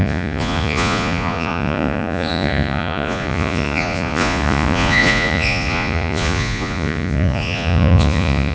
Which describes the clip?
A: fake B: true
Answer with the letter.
A